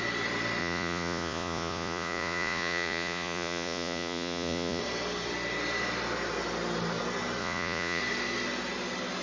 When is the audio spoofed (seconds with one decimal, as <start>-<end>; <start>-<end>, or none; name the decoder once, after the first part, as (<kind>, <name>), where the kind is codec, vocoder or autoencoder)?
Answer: 0.6-4.8 (vocoder, Vocos); 7.4-8.0